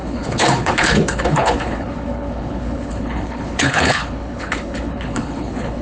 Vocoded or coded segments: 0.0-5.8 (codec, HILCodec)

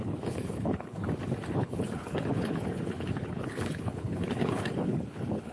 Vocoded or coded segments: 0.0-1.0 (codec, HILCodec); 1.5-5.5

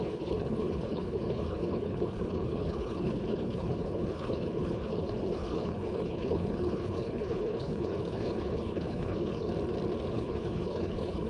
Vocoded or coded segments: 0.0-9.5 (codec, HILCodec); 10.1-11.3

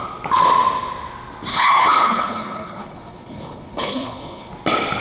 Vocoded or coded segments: 1.5-4.5 (codec, HILCodec)

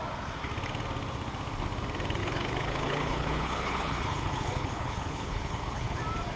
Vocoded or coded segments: 2.2-6.0 (codec, HILCodec)